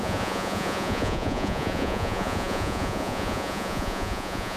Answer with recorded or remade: remade